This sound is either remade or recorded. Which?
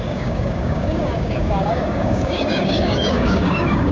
remade